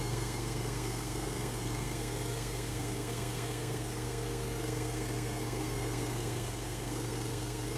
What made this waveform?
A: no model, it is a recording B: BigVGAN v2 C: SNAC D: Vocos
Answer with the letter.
C